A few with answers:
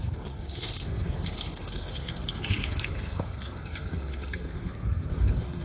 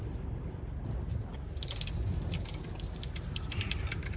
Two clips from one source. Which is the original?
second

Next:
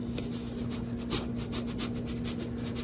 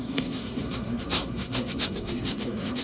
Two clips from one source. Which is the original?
first